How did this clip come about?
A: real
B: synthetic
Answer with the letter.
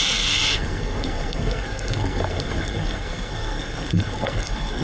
B